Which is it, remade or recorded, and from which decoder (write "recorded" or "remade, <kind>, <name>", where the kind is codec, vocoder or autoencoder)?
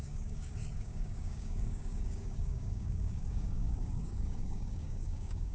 remade, codec, DAC